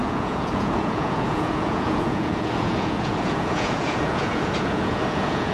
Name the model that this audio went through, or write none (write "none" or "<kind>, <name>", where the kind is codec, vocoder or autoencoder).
vocoder, Vocos